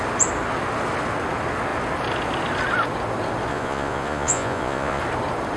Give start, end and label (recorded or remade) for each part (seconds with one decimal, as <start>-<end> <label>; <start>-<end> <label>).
0.0-3.5 recorded; 3.5-5.0 remade; 5.0-5.6 recorded